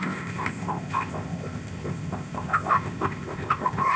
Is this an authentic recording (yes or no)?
no